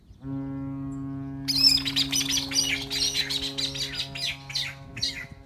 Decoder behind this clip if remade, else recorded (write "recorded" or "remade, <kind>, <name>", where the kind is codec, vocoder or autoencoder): recorded